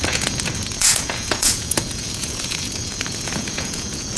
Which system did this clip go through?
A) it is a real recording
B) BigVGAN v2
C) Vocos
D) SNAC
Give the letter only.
C